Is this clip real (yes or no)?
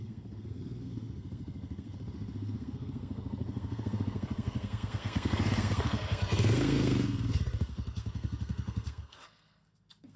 no